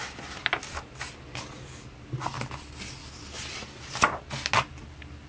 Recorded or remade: recorded